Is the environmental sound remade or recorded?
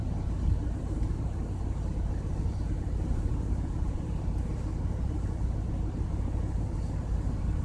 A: remade